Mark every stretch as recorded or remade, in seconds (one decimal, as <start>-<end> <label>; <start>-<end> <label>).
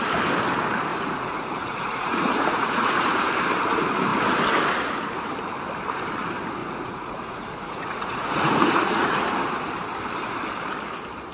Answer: 0.0-0.9 recorded; 0.9-3.2 remade; 3.2-6.6 recorded; 6.6-9.2 remade; 9.2-11.3 recorded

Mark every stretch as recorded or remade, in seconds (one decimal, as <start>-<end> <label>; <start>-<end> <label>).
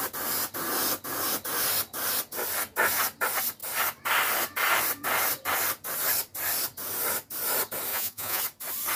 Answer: 0.0-7.9 recorded; 7.9-8.4 remade; 8.4-9.0 recorded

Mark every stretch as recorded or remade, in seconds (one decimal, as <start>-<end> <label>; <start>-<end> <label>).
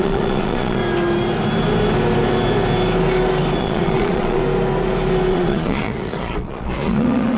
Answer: 0.0-0.8 remade; 0.8-3.6 recorded; 3.6-4.4 remade; 4.4-5.3 recorded; 5.3-7.4 remade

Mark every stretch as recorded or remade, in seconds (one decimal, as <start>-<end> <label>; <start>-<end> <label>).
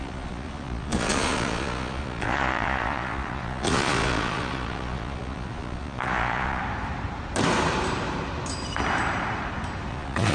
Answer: 0.0-6.6 remade; 6.6-9.9 recorded; 9.9-10.3 remade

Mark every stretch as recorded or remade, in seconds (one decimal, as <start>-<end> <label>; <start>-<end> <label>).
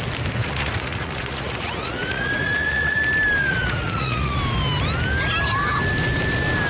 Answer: 0.0-0.4 recorded; 0.4-3.0 remade; 3.0-3.4 recorded; 3.4-4.4 remade; 4.4-6.7 recorded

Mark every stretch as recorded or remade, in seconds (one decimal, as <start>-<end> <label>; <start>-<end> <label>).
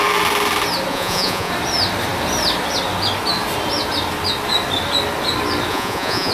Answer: 0.0-0.9 recorded; 0.9-1.5 remade; 1.5-5.7 recorded; 5.7-6.3 remade